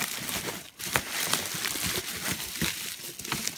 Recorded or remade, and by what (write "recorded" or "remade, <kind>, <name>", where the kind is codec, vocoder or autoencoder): remade, vocoder, BigVGAN v2